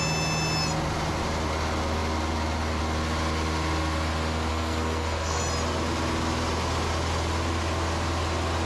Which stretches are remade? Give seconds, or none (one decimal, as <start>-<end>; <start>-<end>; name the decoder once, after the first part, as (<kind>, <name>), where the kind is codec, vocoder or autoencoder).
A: 4.5-5.4 (codec, SNAC)